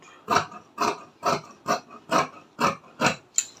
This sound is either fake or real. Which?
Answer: real